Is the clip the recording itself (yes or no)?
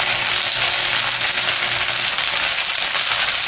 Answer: yes